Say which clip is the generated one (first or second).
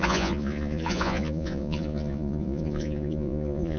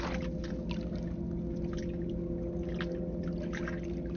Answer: first